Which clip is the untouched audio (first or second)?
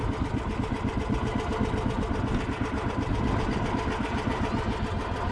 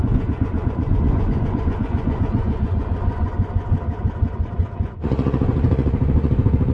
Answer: first